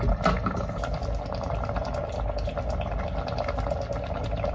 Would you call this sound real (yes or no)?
yes